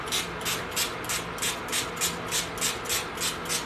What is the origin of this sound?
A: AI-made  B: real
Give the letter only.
B